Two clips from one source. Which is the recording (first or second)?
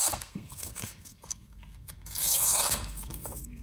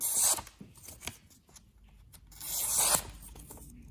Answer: second